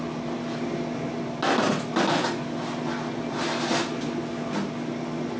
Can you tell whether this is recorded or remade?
recorded